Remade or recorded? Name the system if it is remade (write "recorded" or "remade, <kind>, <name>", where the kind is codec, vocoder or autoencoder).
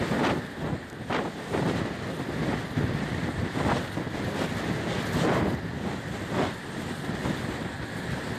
recorded